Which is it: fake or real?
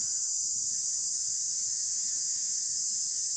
fake